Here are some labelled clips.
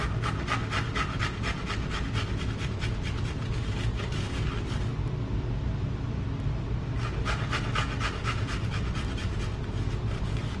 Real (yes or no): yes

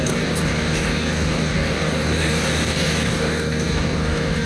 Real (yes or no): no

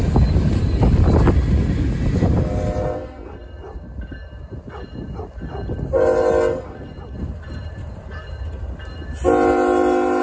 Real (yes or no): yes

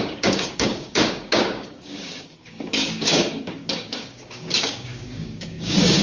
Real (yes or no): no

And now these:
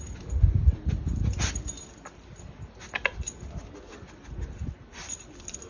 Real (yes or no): yes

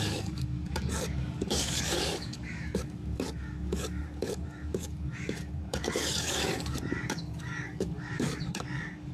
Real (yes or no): no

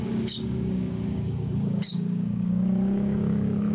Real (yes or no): no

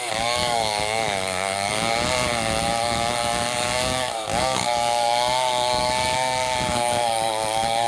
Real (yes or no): no